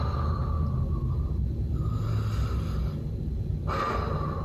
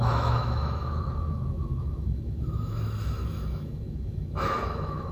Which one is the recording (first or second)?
first